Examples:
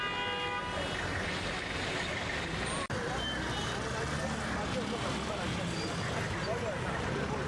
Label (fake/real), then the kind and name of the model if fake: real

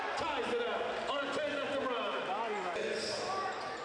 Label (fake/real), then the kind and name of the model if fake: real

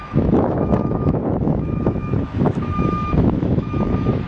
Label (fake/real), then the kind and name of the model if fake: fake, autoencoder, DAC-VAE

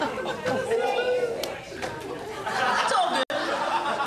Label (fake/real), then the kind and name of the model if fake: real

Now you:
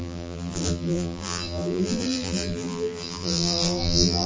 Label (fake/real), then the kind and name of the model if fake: fake, vocoder, BigVGAN v2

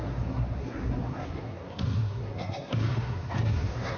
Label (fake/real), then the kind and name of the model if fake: fake, codec, SNAC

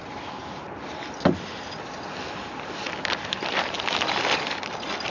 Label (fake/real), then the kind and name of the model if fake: real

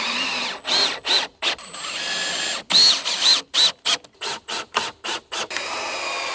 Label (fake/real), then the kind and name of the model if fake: real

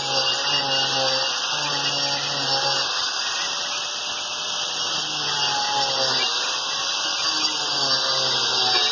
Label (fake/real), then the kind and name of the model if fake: real